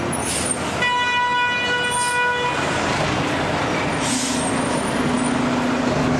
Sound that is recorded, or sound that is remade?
recorded